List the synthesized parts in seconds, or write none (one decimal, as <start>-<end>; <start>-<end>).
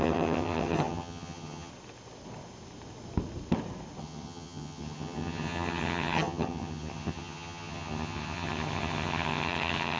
0.0-1.7; 4.0-10.0